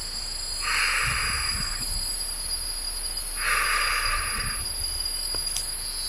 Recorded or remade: recorded